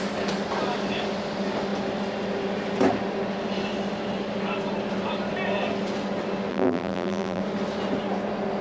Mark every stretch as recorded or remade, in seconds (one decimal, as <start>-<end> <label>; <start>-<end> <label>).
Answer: 0.0-6.5 recorded; 6.5-7.4 remade; 7.4-8.6 recorded